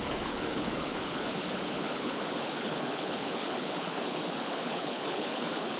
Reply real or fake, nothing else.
fake